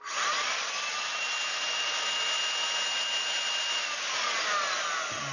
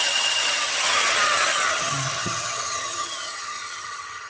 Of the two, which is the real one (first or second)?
first